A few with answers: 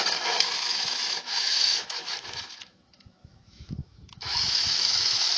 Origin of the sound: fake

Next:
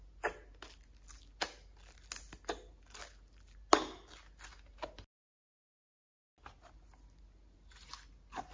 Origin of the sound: real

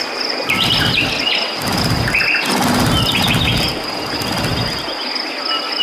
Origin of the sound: real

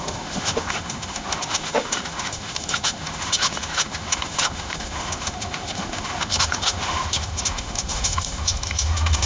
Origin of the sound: fake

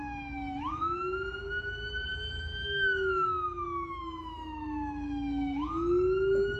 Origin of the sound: fake